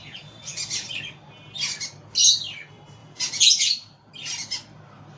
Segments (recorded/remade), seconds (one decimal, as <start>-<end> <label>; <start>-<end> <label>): 0.0-0.9 remade; 0.9-3.0 recorded; 3.0-3.6 remade; 3.6-5.2 recorded